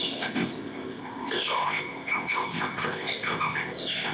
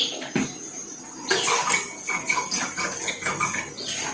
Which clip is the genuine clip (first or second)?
second